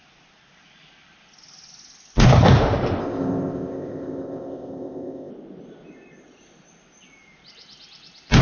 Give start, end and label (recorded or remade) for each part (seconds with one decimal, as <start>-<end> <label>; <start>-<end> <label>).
0.0-3.0 recorded; 3.0-5.3 remade; 5.3-8.4 recorded